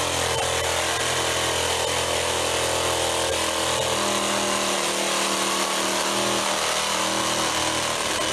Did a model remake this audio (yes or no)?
no